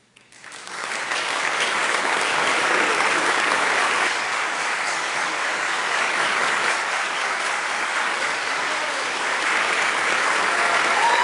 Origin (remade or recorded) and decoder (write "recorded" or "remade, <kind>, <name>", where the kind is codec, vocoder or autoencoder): remade, codec, DAC